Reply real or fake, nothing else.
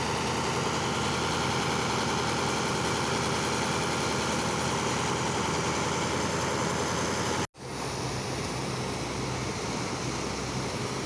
real